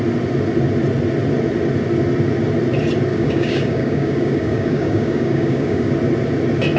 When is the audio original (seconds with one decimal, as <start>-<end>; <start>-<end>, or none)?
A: 0.0-3.1; 5.9-6.8